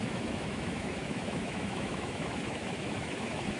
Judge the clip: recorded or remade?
remade